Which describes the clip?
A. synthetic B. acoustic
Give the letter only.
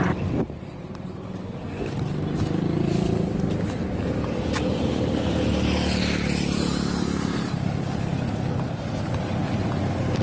B